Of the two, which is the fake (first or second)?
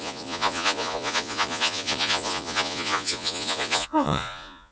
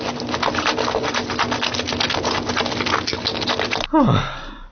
first